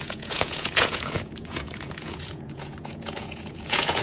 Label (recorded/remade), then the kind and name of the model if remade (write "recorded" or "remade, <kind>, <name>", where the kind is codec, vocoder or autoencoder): remade, vocoder, Vocos